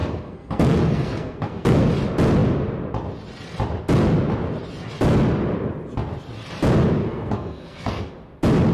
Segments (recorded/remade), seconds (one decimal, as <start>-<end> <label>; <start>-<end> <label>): 0.0-1.9 remade; 1.9-7.0 recorded; 7.0-8.1 remade; 8.1-8.7 recorded